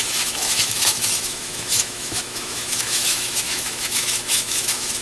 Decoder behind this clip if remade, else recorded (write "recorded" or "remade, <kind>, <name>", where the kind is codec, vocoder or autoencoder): remade, autoencoder, DAC-VAE